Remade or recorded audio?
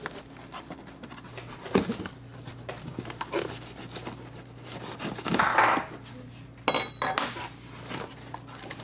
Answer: recorded